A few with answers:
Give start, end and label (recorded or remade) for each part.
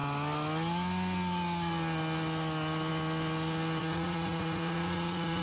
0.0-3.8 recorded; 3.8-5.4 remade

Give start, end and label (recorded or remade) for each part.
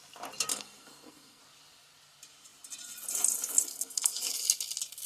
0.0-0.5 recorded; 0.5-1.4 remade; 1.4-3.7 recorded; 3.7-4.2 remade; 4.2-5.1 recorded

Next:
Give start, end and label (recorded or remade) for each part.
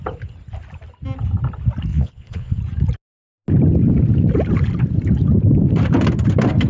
0.0-1.9 recorded; 1.9-2.6 remade; 2.6-6.7 recorded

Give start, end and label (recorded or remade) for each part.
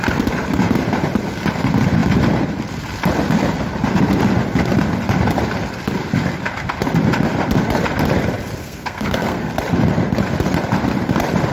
0.0-8.6 recorded; 8.6-9.5 remade; 9.5-11.5 recorded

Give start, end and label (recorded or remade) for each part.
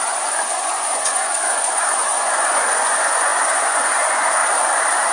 0.0-4.4 remade; 4.4-5.1 recorded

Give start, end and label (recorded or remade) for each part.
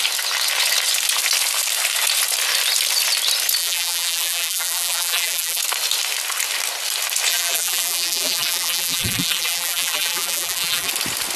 0.0-3.6 recorded; 3.6-5.6 remade; 5.6-7.3 recorded; 7.3-10.9 remade; 10.9-11.4 recorded